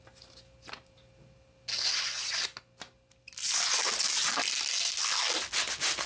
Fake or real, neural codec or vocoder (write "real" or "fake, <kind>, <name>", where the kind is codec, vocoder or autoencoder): real